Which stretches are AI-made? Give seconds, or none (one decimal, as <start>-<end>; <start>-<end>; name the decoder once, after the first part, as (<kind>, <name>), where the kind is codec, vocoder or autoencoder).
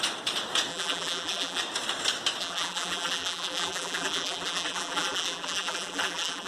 0.7-1.6 (vocoder, BigVGAN v2); 2.4-6.5